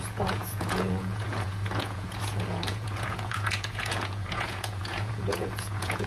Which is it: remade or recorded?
remade